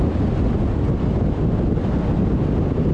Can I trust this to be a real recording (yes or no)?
yes